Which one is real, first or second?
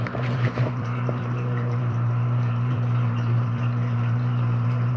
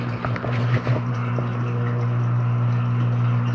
second